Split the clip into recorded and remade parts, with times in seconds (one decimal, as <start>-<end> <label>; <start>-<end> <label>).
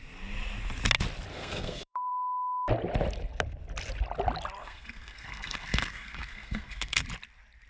0.0-1.3 recorded; 1.3-2.1 remade; 2.1-4.6 recorded; 4.6-7.0 remade; 7.0-7.7 recorded